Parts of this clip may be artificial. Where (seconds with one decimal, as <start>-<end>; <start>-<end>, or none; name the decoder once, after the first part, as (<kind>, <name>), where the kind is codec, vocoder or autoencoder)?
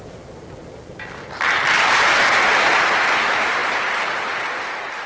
none